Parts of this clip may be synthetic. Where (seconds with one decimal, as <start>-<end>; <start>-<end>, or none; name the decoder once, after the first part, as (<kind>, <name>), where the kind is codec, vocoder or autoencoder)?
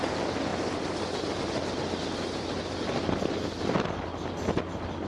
none